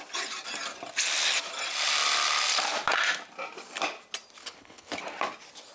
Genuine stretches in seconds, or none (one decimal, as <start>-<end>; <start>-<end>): 0.0-4.4; 5.0-5.7